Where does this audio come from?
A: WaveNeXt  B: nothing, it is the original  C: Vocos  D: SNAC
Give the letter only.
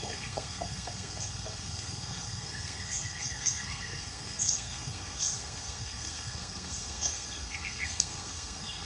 D